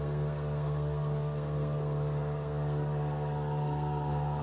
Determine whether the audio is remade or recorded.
remade